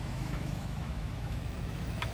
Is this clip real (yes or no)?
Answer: no